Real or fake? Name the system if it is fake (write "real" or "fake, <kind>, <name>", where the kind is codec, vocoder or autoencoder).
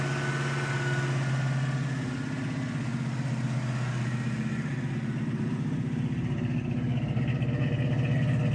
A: real